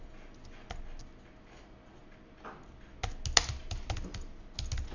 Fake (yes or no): no